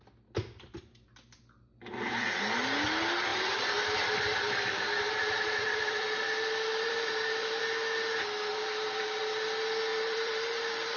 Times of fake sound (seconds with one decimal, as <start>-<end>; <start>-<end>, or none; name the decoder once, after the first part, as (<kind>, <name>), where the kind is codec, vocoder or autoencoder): 3.3-7.6 (vocoder, BigVGAN v2); 8.5-9.2; 9.9-11.0